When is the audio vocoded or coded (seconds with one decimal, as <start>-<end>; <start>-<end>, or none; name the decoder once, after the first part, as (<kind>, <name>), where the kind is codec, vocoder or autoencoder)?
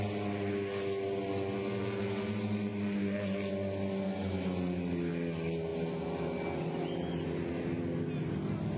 none